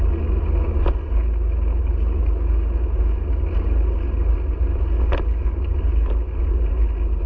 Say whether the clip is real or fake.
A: real